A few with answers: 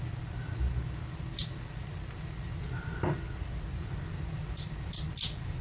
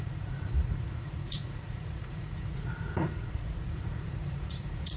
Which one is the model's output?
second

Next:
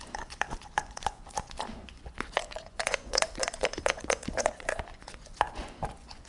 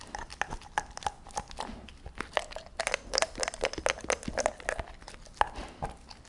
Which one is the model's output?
first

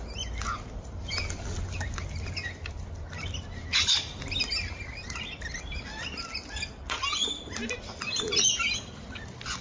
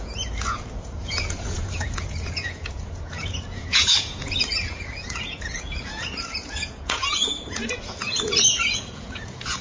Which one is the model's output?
second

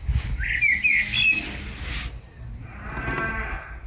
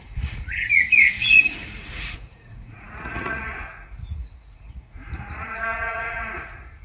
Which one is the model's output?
second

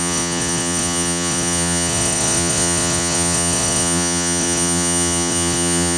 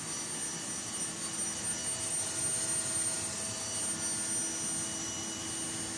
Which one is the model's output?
first